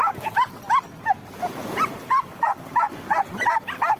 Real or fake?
real